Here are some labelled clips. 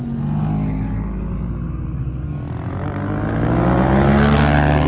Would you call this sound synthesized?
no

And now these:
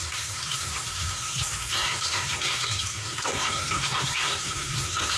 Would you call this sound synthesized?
yes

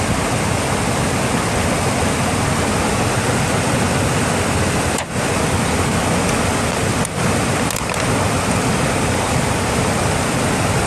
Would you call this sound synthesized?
no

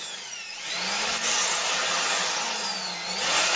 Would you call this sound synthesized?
no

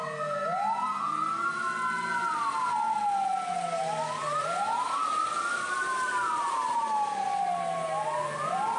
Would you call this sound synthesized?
no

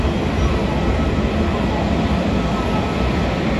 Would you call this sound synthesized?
no